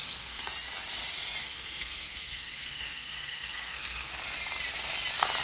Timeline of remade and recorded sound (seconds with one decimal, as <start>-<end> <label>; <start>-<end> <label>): 0.0-0.5 remade; 0.5-1.4 recorded; 1.4-4.1 remade; 4.1-5.4 recorded